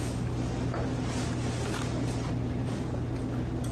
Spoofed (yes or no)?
no